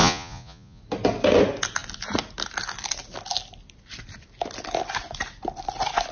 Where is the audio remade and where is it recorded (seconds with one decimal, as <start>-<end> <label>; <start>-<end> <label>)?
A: 0.0-0.8 remade; 0.8-6.1 recorded

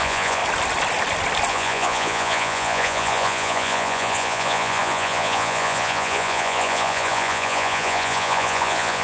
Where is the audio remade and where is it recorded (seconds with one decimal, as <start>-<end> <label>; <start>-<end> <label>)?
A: 0.0-0.4 remade; 0.4-1.5 recorded; 1.5-9.0 remade

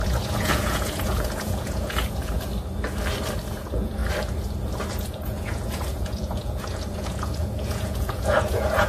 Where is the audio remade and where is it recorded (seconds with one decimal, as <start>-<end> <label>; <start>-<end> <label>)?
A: 0.0-2.5 remade; 2.5-3.5 recorded; 3.5-4.0 remade; 4.0-4.9 recorded; 4.9-8.9 remade

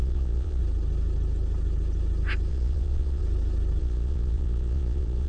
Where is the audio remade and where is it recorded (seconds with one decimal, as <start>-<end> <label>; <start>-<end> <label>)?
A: 0.0-0.6 remade; 0.6-2.5 recorded; 2.5-3.2 remade; 3.2-3.8 recorded; 3.8-5.3 remade